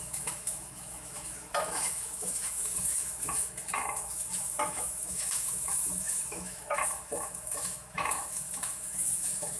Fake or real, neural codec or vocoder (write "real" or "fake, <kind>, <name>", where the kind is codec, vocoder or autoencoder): fake, autoencoder, DAC-VAE